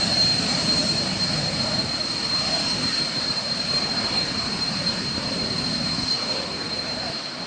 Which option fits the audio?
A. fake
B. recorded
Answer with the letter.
A